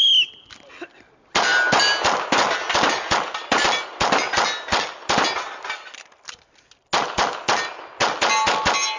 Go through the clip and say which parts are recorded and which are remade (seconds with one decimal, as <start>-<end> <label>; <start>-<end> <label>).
0.0-9.0 recorded

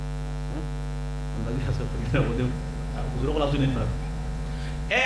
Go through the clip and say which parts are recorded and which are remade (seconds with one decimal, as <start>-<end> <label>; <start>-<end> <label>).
0.0-1.9 recorded; 1.9-5.1 remade

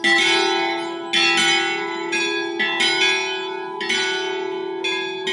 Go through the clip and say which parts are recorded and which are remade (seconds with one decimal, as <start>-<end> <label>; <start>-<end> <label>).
0.0-5.3 recorded

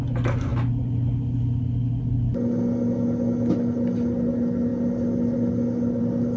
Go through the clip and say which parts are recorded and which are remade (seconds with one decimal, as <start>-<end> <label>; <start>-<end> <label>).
0.0-6.4 recorded

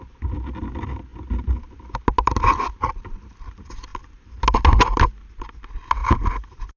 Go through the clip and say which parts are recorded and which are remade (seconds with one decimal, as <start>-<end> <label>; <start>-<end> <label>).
0.0-6.8 recorded